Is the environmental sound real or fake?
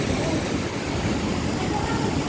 real